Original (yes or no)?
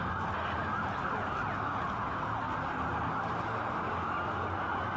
yes